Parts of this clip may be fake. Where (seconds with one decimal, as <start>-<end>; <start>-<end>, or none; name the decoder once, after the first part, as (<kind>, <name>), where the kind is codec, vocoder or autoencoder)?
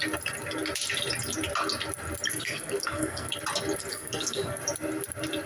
2.3-3.3 (codec, SNAC); 3.9-4.6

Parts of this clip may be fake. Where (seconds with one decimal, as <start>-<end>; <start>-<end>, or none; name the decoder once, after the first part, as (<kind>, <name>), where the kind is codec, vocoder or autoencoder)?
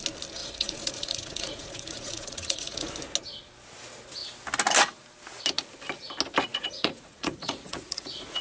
0.4-2.9 (vocoder, Vocos); 6.5-8.4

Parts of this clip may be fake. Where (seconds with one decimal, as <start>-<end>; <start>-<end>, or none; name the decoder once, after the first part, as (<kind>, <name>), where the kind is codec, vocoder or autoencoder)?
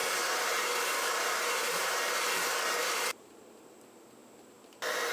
0.0-2.1 (vocoder, BigVGAN v2); 2.8-3.7